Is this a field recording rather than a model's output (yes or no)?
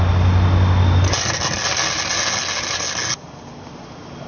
yes